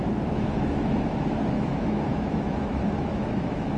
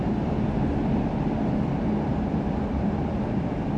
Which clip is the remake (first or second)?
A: first